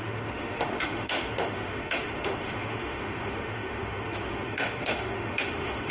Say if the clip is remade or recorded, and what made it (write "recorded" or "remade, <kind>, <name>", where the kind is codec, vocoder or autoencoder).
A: remade, autoencoder, DAC-VAE